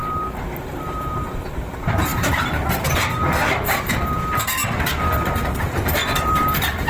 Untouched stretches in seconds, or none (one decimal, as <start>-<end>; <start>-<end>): 0.0-0.7; 4.6-5.4